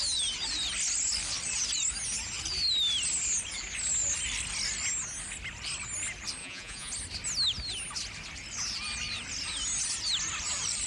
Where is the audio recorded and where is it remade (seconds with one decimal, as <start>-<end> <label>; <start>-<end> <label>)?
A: 0.0-6.4 recorded; 6.4-6.9 remade; 6.9-10.9 recorded